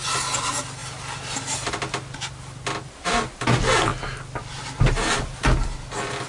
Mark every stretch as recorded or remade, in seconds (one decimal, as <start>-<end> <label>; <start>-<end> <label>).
0.0-6.3 recorded